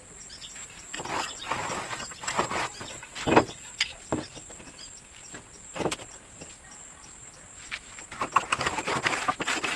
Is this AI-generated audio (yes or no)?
no